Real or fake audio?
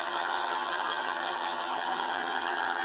fake